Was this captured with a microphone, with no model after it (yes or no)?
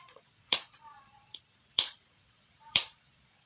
no